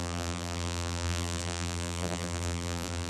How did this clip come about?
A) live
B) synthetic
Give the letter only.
B